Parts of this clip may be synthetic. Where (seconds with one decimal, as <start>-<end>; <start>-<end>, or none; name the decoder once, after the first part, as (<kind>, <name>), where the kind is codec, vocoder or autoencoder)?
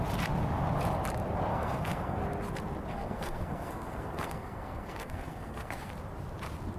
1.5-2.2 (codec, SNAC); 2.9-5.9